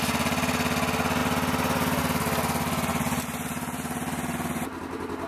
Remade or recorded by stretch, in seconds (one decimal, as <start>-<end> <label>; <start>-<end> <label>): 0.0-2.9 recorded; 2.9-4.8 remade; 4.8-5.3 recorded

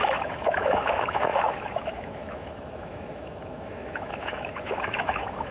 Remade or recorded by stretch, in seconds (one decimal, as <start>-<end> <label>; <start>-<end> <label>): 0.0-5.5 remade